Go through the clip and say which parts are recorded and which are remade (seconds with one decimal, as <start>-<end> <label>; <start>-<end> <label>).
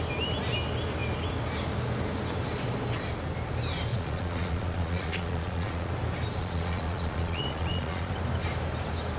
0.0-3.9 recorded; 3.9-5.9 remade; 5.9-6.4 recorded; 6.4-8.1 remade; 8.1-9.2 recorded